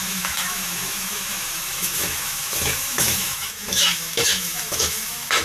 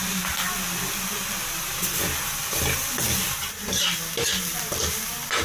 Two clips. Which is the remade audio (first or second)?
first